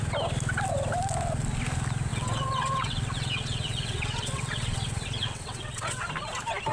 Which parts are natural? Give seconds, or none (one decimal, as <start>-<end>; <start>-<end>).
0.0-2.1; 6.1-6.7